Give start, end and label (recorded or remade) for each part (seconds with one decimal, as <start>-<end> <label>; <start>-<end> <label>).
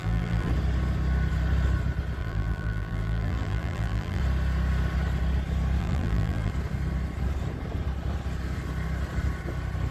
0.0-0.5 remade; 0.5-2.2 recorded; 2.2-4.2 remade; 4.2-5.8 recorded; 5.8-6.5 remade; 6.5-9.9 recorded